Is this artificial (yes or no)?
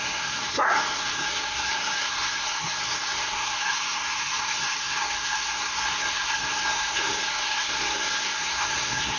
yes